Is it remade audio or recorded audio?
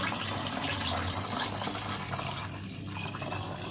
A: recorded